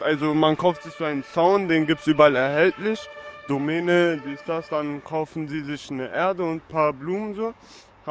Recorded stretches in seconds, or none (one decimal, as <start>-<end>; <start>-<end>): none